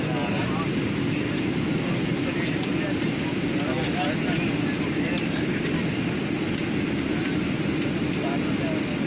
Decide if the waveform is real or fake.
real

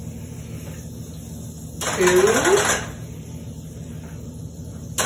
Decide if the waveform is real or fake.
real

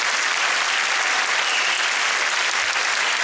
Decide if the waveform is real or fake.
real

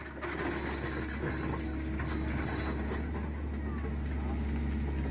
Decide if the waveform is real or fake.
real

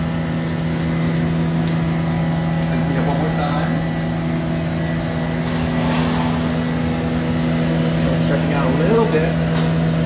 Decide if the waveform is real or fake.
real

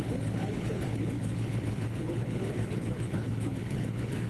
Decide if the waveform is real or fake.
fake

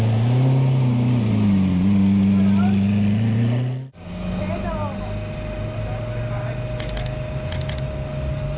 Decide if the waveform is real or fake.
real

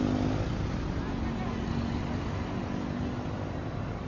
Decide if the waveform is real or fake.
real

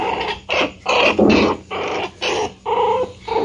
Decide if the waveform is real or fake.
real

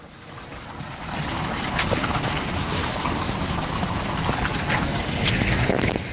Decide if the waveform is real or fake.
real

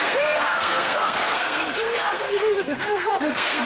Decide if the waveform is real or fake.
fake